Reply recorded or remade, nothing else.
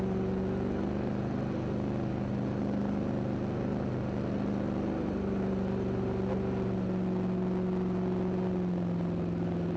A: recorded